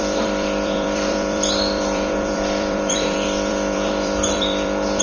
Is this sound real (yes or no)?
no